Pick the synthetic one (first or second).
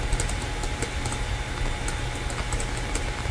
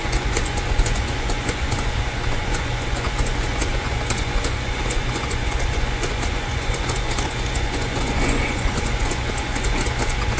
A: second